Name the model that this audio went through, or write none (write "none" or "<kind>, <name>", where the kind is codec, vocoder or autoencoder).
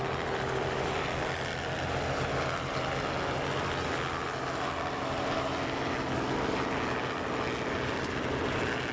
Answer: none